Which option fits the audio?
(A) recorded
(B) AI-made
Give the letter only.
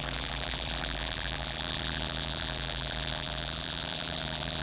B